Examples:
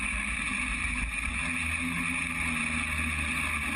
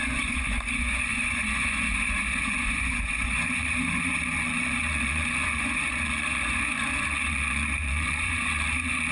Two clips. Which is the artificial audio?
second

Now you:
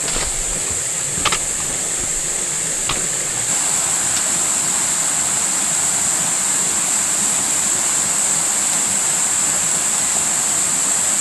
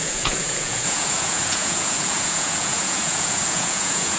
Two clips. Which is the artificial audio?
second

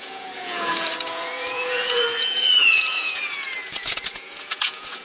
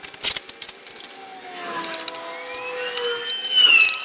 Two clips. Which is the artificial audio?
first